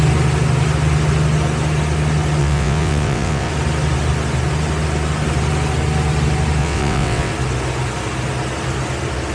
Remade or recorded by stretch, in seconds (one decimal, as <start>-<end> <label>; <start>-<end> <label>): 0.0-2.4 recorded; 2.4-3.5 remade; 3.5-6.6 recorded; 6.6-7.3 remade; 7.3-9.3 recorded